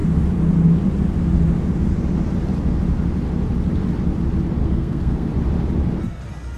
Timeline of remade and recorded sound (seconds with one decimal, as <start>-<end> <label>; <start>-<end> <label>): 0.0-4.6 recorded; 4.6-5.3 remade; 5.3-6.6 recorded